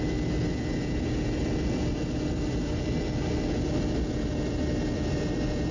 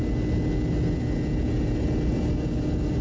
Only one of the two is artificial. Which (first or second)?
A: first